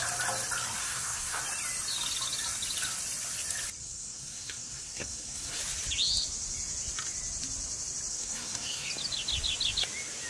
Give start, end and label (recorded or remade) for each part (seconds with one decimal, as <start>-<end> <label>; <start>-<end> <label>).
0.0-0.8 recorded; 0.8-1.4 remade; 1.4-3.8 recorded; 3.8-5.6 remade; 5.6-8.1 recorded; 8.1-8.9 remade; 8.9-10.3 recorded